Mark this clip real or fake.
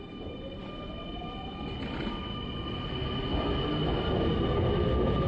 real